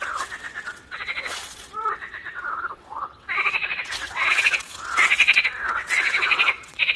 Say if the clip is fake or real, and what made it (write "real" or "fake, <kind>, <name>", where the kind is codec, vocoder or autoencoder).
fake, vocoder, WaveNeXt